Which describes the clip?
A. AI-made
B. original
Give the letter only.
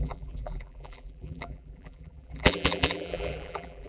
A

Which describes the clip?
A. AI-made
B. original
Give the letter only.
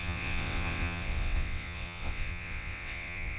A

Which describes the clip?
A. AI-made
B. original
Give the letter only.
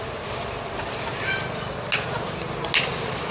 B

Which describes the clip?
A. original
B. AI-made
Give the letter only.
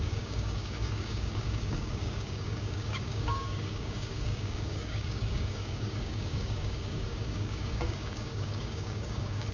B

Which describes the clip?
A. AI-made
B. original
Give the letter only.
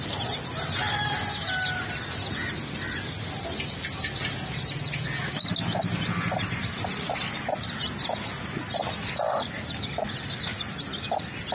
B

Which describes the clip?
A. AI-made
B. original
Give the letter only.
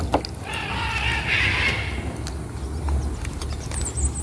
B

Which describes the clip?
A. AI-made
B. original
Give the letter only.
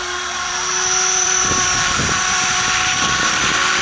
A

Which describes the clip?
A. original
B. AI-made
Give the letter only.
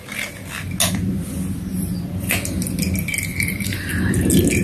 A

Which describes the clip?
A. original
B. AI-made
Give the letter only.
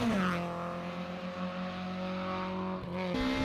A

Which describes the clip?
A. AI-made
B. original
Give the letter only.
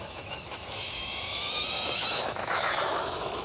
A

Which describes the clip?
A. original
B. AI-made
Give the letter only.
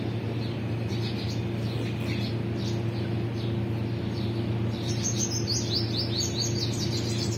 A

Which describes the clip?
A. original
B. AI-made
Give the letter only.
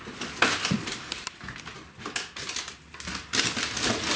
A